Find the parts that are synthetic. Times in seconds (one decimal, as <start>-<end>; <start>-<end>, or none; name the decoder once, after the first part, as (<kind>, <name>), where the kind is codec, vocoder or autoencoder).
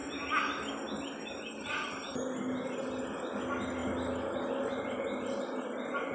none